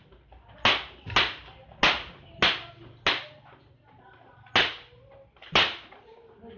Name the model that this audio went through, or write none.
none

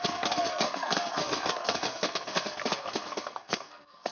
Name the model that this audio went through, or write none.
codec, SNAC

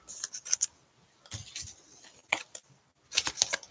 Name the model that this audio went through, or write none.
none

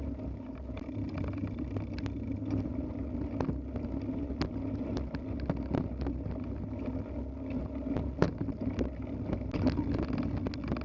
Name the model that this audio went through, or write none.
none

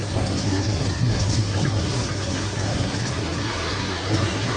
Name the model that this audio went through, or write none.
codec, SNAC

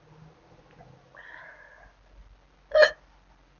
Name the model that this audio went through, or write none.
none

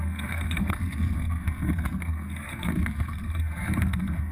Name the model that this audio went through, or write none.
codec, SNAC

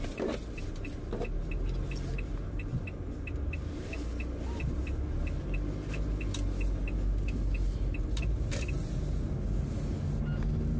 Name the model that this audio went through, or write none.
none